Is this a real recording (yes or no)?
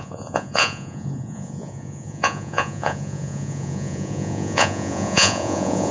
no